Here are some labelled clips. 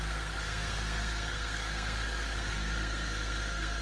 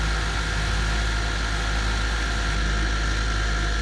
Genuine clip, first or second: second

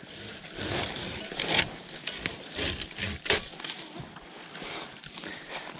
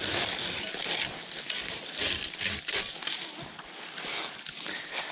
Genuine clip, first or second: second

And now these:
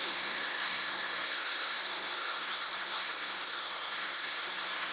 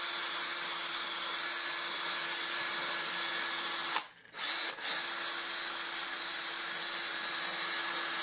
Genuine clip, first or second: second